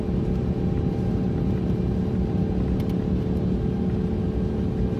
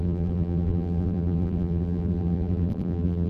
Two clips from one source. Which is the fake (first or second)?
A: second